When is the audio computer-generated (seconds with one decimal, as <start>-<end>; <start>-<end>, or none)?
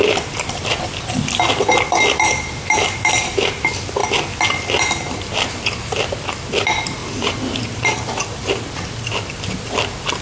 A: 0.0-4.0; 4.8-10.2